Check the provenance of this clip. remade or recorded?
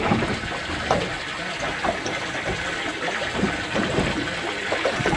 recorded